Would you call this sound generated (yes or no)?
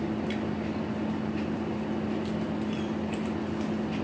no